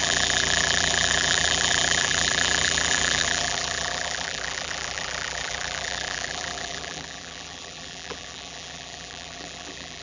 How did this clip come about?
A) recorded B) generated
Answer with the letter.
B